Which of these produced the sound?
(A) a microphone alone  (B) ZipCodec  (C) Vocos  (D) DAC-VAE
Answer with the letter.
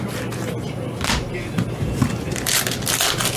A